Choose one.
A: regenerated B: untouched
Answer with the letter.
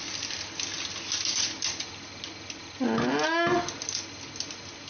B